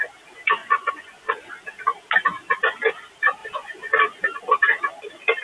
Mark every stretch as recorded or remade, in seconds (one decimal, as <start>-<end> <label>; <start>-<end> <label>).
0.0-0.6 recorded; 0.6-1.3 remade; 1.3-3.4 recorded; 3.4-4.0 remade; 4.0-5.4 recorded